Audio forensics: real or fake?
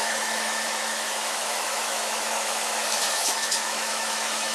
fake